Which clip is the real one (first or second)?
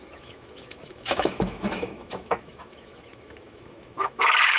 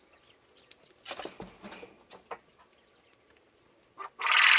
second